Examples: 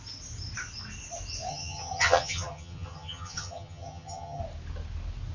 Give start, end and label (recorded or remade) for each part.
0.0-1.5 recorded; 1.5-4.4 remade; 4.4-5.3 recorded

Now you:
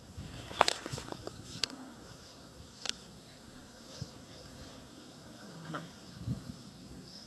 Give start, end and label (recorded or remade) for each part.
0.0-7.3 remade